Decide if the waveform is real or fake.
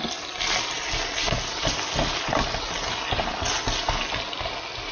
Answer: real